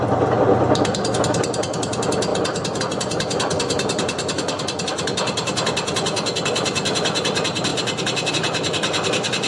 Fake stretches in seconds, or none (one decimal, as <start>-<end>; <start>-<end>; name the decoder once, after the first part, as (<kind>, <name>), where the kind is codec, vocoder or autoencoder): none